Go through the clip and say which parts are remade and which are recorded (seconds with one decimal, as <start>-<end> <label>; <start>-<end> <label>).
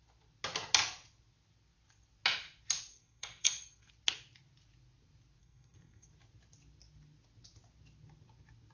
0.0-2.9 recorded; 2.9-3.9 remade; 3.9-5.4 recorded; 5.4-6.1 remade; 6.1-8.7 recorded